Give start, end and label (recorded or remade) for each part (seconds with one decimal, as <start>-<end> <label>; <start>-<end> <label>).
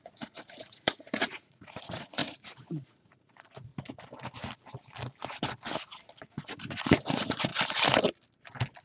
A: 0.0-3.7 remade; 3.7-6.2 recorded; 6.2-7.5 remade; 7.5-8.8 recorded